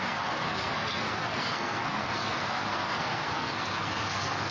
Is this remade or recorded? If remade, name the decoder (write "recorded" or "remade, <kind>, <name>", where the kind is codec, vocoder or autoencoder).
remade, codec, SNAC